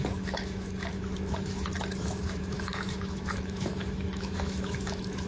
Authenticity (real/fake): fake